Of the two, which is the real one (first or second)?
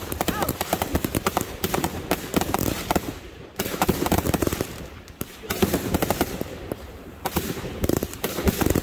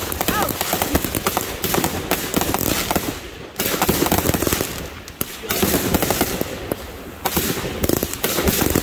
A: second